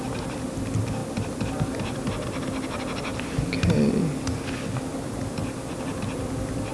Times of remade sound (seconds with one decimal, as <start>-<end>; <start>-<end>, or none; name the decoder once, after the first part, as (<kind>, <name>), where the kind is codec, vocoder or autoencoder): 1.0-1.7 (vocoder, BigVGAN v2); 3.1-3.9

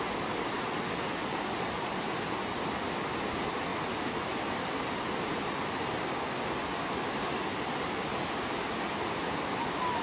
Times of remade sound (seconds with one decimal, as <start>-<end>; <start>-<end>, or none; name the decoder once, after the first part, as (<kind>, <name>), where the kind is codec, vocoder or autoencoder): 1.2-2.3 (vocoder, BigVGAN v2)

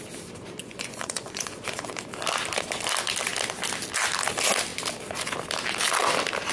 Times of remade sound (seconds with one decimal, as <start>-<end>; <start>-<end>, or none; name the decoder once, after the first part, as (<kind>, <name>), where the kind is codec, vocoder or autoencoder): 0.6-1.9 (vocoder, Vocos)

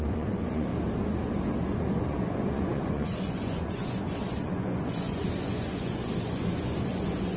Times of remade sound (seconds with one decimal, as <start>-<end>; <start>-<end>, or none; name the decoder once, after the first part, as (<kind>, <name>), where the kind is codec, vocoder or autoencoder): 0.0-0.7 (vocoder, Vocos); 1.8-7.4

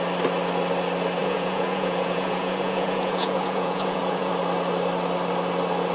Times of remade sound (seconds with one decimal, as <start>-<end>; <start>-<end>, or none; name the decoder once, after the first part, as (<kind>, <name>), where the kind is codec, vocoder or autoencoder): 1.2-4.3 (vocoder, Vocos)

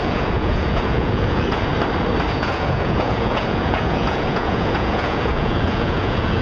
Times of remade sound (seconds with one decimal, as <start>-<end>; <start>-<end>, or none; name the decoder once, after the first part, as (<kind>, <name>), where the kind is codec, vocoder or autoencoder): 0.0-1.7 (vocoder, Vocos); 2.3-6.4